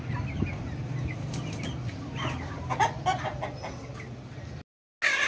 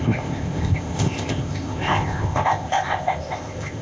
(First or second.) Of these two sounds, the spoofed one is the second